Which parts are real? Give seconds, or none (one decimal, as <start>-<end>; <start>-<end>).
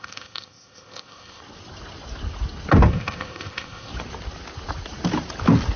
1.4-2.9; 3.9-5.8